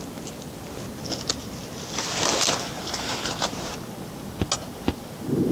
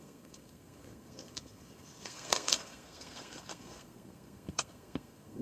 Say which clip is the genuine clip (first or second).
first